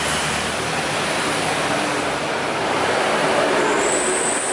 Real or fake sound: real